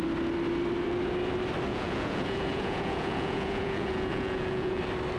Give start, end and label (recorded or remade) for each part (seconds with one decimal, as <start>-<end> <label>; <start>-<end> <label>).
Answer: 0.0-1.7 recorded; 1.7-4.8 remade; 4.8-5.2 recorded